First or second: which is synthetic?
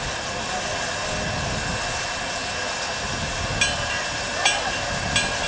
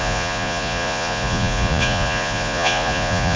second